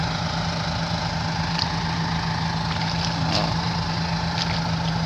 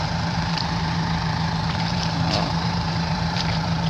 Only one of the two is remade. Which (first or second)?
second